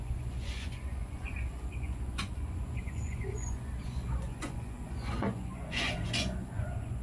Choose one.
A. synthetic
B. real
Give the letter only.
A